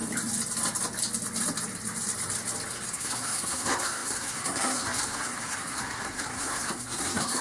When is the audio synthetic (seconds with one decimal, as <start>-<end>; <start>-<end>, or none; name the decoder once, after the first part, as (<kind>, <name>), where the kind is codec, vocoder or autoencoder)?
2.9-7.4 (codec, SNAC)